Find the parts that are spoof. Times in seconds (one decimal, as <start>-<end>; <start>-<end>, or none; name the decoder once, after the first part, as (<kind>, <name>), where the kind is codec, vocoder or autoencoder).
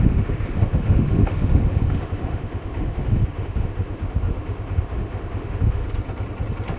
0.0-5.8 (autoencoder, DAC-VAE)